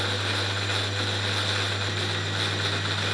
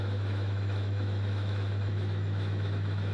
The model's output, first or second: second